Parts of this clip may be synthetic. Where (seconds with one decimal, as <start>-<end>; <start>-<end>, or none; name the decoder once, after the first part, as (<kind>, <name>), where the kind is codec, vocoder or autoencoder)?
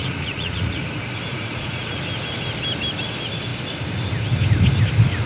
0.0-0.8 (vocoder, Vocos); 1.3-1.9